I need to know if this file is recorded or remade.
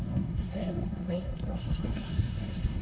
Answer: remade